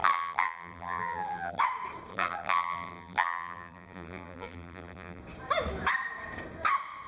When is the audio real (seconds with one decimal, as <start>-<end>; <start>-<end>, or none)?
1.6-2.1; 5.2-7.1